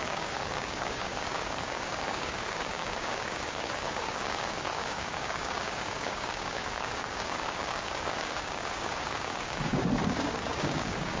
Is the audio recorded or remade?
remade